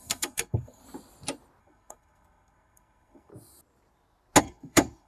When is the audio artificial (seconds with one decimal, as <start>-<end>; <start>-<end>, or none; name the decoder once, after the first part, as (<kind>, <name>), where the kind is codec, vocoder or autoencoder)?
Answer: 0.0-0.8 (codec, SNAC); 1.6-3.3; 4.4-5.1